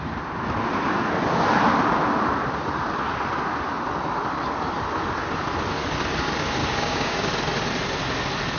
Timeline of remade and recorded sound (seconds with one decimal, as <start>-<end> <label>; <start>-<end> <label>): 0.0-6.6 recorded; 6.6-7.3 remade; 7.3-8.6 recorded